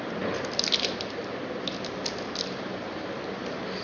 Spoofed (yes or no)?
no